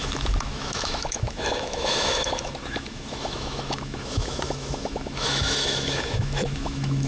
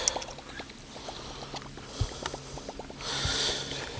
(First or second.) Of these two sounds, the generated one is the first